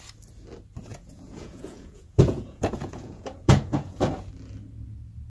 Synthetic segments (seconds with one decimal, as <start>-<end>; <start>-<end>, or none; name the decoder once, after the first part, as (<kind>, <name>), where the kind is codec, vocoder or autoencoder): 0.9-4.1 (vocoder, Vocos)